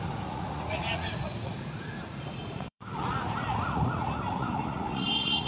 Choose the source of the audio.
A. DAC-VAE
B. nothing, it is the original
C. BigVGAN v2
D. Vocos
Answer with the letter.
D